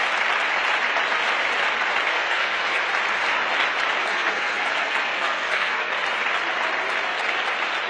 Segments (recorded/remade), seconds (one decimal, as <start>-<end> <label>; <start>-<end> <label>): 0.0-2.1 recorded; 2.1-2.8 remade; 2.8-4.0 recorded; 4.0-5.9 remade; 5.9-7.9 recorded